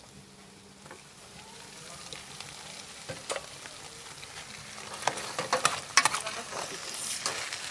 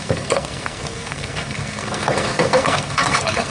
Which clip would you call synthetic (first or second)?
second